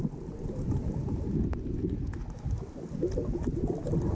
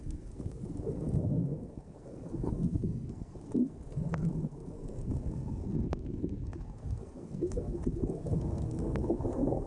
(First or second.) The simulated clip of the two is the second